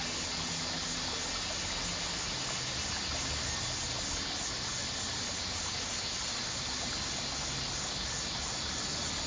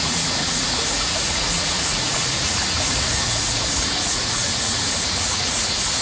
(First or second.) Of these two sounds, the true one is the first